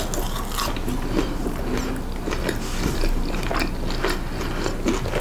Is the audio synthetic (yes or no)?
no